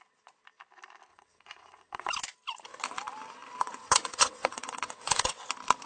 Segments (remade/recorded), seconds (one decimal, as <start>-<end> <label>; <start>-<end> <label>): 0.0-1.1 recorded; 1.1-2.1 remade; 2.1-3.8 recorded; 3.8-5.4 remade; 5.4-5.9 recorded